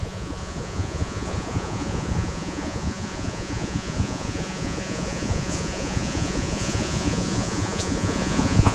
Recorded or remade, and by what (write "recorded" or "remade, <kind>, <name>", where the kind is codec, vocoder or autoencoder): remade, vocoder, Vocos